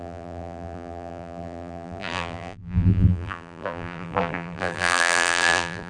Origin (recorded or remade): remade